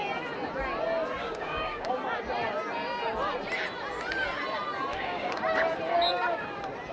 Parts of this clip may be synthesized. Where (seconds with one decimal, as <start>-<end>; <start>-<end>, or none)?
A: 1.2-1.9; 4.9-5.4